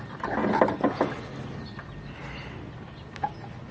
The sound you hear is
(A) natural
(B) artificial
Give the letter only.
A